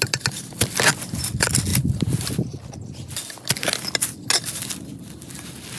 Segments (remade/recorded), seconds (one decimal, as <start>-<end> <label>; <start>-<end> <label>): 0.0-5.8 recorded